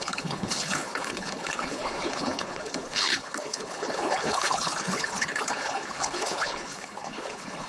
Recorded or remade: remade